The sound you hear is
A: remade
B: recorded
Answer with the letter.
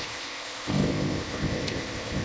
A